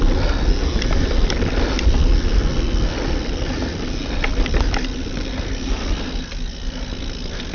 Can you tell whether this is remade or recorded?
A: recorded